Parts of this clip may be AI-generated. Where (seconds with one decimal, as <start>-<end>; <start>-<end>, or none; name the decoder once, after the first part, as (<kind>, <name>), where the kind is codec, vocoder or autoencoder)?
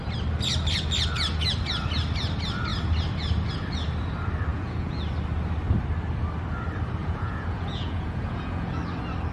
4.5-5.0 (vocoder, Vocos); 7.0-8.8